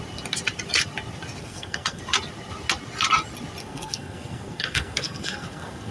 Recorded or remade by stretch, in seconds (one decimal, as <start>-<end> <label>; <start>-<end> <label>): 0.0-1.4 recorded; 1.4-2.0 remade; 2.0-3.6 recorded; 3.6-5.9 remade